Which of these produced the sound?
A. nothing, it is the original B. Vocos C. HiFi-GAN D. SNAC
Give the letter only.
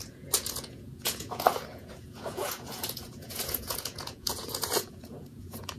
B